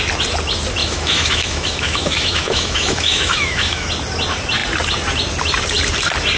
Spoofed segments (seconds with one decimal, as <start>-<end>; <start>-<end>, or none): 0.8-3.9